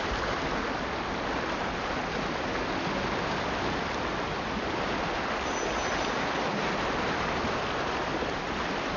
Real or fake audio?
real